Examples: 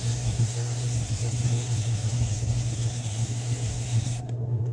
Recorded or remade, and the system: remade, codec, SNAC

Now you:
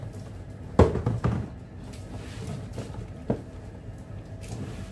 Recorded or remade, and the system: recorded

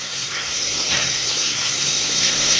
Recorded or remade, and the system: remade, codec, SNAC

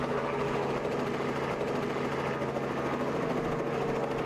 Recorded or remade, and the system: recorded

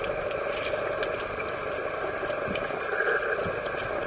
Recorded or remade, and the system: recorded